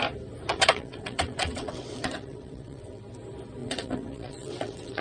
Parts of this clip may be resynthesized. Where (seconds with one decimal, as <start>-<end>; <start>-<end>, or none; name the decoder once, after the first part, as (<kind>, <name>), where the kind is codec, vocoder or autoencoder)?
0.5-3.0 (vocoder, WaveNeXt); 3.6-5.0